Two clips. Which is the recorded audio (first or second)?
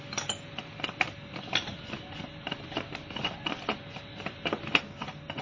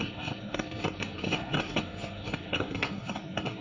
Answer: first